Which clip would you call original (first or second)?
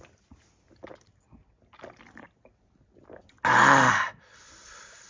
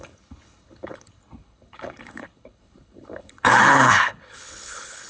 first